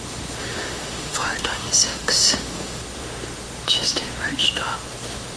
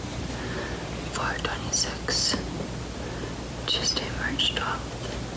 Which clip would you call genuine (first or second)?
second